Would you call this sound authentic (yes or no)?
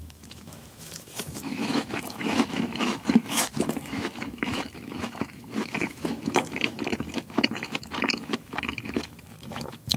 no